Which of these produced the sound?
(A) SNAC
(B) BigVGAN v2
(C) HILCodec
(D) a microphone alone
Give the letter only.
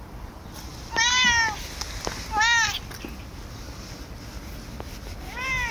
D